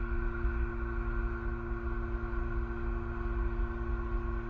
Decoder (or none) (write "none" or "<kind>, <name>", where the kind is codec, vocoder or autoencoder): none